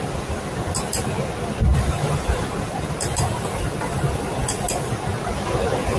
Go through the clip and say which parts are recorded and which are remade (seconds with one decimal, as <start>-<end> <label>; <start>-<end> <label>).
0.0-1.7 recorded; 1.7-4.9 remade; 4.9-6.0 recorded